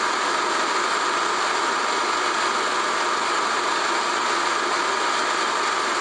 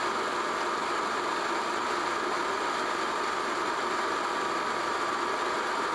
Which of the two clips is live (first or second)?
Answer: first